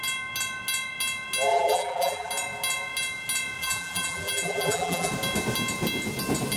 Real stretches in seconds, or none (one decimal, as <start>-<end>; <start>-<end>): 0.0-1.5; 2.3-3.6; 5.1-6.6